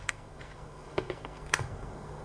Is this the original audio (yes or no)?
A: no